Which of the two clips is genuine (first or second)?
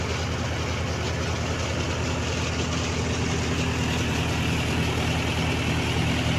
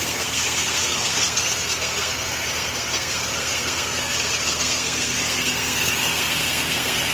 first